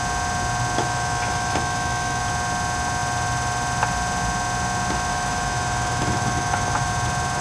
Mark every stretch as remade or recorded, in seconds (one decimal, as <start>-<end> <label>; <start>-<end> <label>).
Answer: 0.0-0.8 recorded; 0.8-2.2 remade; 2.2-5.1 recorded; 5.1-6.9 remade; 6.9-7.4 recorded

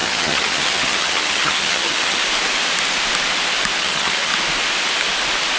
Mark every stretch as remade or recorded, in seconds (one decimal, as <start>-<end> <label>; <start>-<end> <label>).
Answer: 0.0-2.2 remade; 2.2-3.8 recorded; 3.8-4.3 remade; 4.3-5.6 recorded

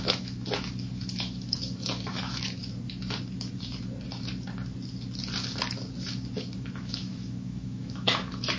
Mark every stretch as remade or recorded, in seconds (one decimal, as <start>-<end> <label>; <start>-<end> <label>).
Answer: 0.0-2.6 remade; 2.6-6.4 recorded; 6.4-8.6 remade

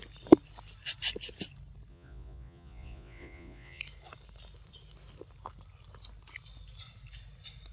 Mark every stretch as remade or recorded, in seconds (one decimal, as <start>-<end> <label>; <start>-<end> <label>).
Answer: 0.0-1.9 recorded; 1.9-3.8 remade; 3.8-7.7 recorded

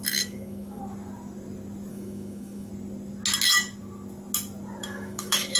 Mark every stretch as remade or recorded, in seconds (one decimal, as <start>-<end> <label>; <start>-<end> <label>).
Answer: 0.0-0.8 remade; 0.8-1.9 recorded; 1.9-2.7 remade; 2.7-4.8 recorded; 4.8-5.6 remade

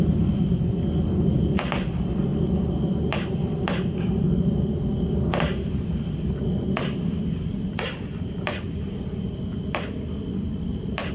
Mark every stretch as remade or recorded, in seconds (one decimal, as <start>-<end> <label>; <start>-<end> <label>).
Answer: 0.0-7.5 recorded; 7.5-11.1 remade